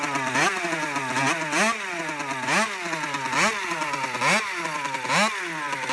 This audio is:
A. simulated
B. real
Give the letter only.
B